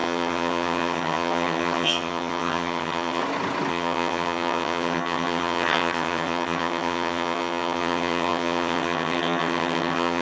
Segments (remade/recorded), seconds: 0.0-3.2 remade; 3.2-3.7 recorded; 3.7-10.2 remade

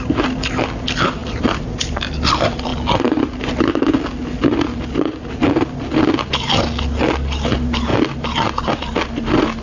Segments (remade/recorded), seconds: 0.0-9.6 recorded

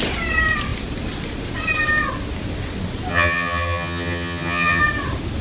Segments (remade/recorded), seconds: 0.0-3.1 recorded; 3.1-4.8 remade; 4.8-5.4 recorded

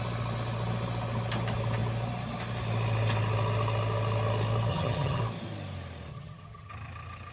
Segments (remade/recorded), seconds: 0.0-4.7 recorded; 4.7-5.2 remade; 5.2-6.1 recorded; 6.1-6.7 remade; 6.7-7.3 recorded